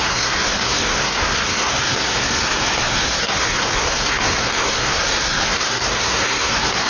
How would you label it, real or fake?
fake